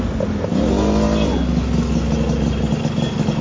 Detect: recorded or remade recorded